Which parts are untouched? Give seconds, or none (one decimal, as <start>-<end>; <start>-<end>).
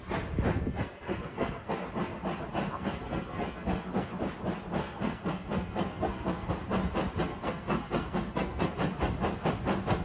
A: 0.0-0.5; 1.7-2.7; 4.1-4.8; 6.5-7.3; 8.7-10.0